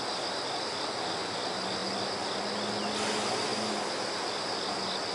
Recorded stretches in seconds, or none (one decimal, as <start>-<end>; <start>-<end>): 0.0-5.1